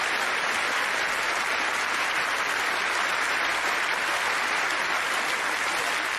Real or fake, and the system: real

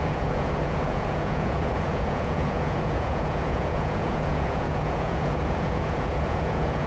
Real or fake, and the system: fake, vocoder, Vocos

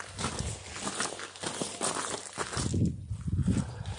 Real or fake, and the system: real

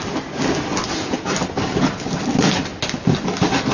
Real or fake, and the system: real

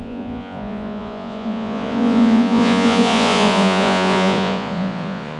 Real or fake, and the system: fake, vocoder, Vocos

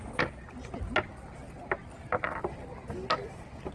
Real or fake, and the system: real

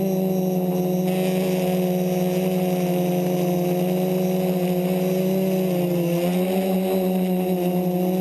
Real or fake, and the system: real